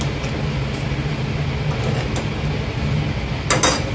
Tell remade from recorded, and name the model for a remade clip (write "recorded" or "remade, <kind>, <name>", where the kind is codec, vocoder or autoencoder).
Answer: recorded